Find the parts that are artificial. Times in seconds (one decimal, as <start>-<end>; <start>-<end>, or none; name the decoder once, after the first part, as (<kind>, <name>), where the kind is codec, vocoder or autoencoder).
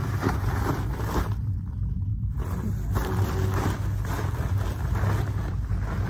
0.0-1.7 (vocoder, BigVGAN v2); 2.1-2.7